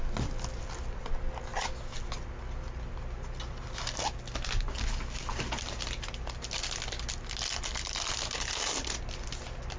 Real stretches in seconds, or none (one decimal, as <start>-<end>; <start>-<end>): 0.0-9.8